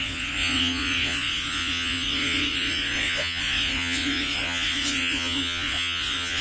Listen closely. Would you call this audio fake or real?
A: fake